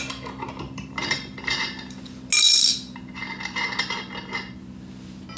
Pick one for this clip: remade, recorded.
recorded